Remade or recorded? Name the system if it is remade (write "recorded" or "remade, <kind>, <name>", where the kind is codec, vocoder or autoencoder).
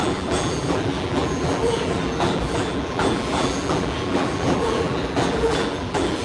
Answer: remade, vocoder, BigVGAN v2